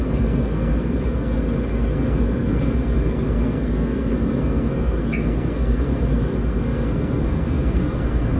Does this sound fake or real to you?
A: fake